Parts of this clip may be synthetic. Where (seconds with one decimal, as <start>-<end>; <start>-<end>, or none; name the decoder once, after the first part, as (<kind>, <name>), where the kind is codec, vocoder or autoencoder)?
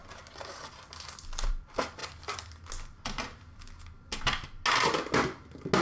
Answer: none